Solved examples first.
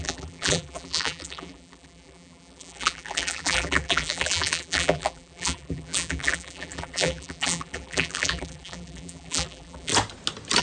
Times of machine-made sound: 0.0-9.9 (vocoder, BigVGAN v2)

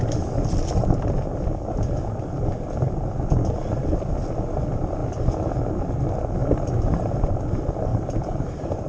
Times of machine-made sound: 6.4-7.2 (vocoder, BigVGAN v2); 7.9-8.9